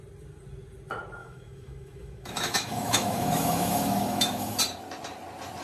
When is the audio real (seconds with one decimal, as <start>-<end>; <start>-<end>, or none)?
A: 0.0-1.2; 4.6-5.6